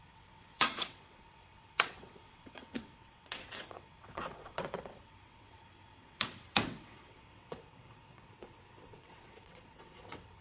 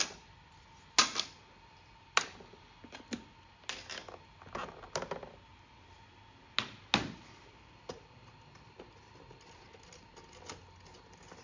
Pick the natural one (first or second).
second